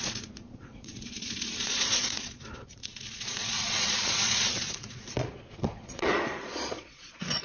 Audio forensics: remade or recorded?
remade